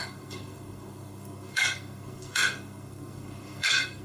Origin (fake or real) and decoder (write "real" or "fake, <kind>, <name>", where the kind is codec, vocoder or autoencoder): fake, codec, SNAC